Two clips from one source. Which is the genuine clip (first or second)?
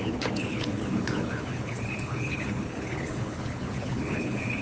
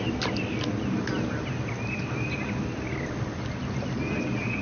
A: second